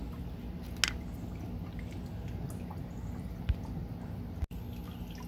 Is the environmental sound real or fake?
real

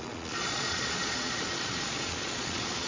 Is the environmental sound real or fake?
fake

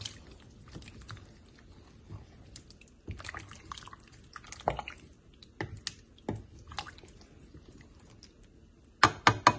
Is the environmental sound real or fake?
real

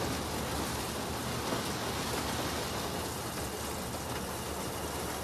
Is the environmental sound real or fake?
real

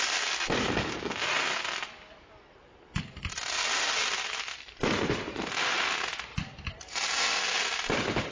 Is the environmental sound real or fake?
real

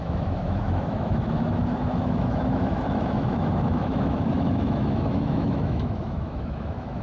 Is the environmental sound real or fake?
fake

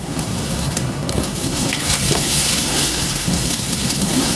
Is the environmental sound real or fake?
fake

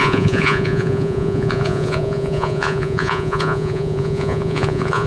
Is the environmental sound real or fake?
fake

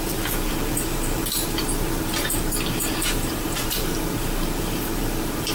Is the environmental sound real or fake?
fake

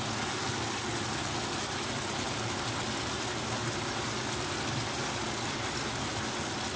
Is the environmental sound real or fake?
real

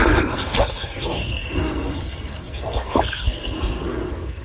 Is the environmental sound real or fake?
fake